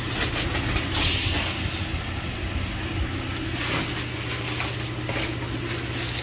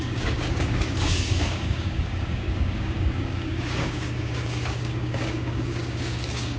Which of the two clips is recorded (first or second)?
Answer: first